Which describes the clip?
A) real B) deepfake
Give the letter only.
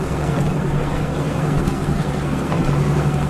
B